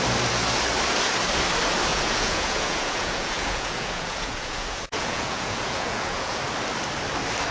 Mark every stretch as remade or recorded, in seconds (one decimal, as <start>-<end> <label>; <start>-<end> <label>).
0.0-1.9 recorded; 1.9-6.4 remade; 6.4-7.5 recorded